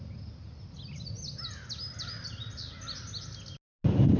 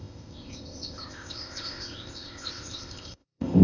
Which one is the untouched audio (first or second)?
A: first